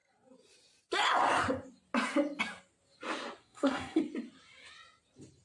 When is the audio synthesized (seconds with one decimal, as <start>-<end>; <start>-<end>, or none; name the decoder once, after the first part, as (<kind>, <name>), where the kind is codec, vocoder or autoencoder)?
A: 3.4-4.0 (codec, SNAC)